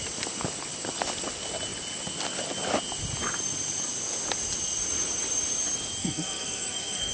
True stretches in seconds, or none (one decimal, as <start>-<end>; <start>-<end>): 0.0-6.0